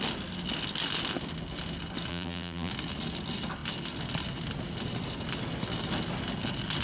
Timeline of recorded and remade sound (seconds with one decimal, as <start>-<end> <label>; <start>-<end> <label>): 0.0-2.1 recorded; 2.1-2.7 remade; 2.7-6.8 recorded